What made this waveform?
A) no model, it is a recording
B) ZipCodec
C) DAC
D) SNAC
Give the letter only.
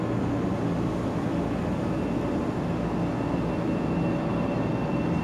A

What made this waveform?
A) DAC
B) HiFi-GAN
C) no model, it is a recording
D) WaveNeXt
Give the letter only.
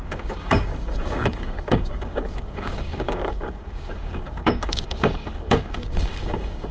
A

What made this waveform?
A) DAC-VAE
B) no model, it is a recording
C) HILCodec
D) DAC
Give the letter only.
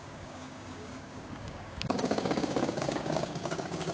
D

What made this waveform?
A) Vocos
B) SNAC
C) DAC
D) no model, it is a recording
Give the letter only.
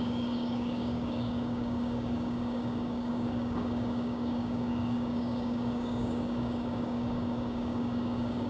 C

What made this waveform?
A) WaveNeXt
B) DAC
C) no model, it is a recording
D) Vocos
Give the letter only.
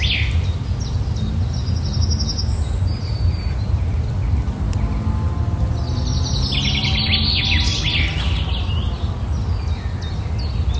C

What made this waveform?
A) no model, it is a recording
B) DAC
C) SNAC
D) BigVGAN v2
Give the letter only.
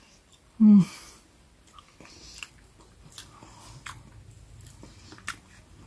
A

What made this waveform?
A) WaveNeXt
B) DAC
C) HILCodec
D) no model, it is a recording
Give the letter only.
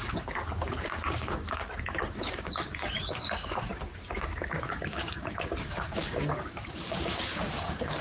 B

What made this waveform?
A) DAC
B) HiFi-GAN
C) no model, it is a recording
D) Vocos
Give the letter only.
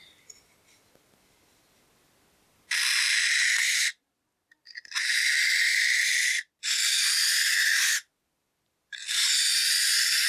C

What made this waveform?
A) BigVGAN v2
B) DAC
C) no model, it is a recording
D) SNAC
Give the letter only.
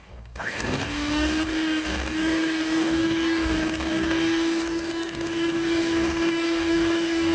B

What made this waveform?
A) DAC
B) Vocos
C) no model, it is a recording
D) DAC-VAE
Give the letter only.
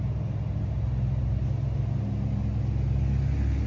C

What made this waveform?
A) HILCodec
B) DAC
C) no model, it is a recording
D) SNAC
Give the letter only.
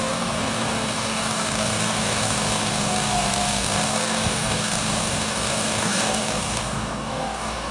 B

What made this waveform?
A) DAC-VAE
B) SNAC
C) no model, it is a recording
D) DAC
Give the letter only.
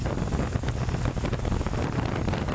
C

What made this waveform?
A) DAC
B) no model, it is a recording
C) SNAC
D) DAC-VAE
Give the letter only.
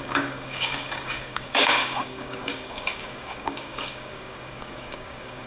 A